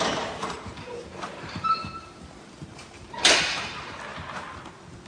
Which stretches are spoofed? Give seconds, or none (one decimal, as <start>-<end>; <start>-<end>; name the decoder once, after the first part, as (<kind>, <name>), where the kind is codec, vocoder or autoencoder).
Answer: 0.0-4.1 (vocoder, BigVGAN v2)